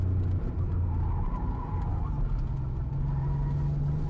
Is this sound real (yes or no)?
yes